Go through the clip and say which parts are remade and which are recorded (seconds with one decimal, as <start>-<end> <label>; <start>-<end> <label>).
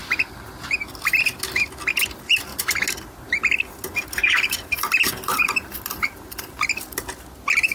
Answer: 0.0-7.7 recorded